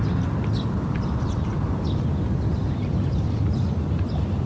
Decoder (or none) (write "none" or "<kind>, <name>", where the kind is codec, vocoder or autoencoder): none